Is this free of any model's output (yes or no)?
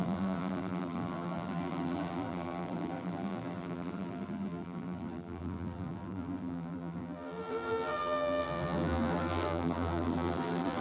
no